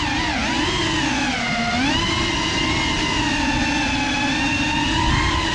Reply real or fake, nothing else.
fake